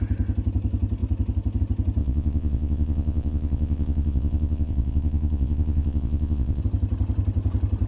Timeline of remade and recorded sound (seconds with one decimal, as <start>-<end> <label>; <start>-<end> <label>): 0.0-2.0 recorded; 2.0-6.6 remade; 6.6-7.9 recorded